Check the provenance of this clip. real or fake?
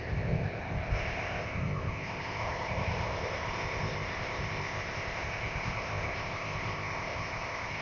fake